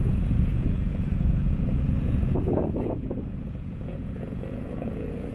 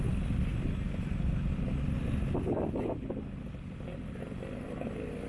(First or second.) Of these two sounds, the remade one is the first